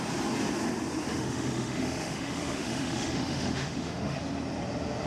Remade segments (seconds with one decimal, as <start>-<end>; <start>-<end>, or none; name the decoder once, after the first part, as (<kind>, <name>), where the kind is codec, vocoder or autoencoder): 1.1-4.2 (autoencoder, DAC-VAE)